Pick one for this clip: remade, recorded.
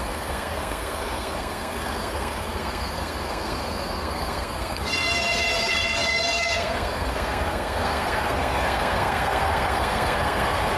remade